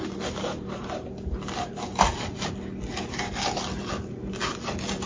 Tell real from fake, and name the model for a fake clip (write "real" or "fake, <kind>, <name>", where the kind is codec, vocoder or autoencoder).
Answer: real